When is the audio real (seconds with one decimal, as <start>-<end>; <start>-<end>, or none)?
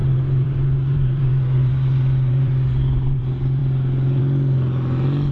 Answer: 3.2-5.3